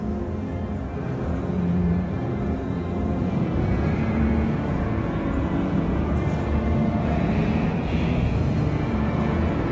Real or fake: fake